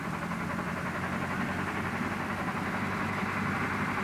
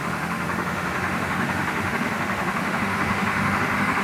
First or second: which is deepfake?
second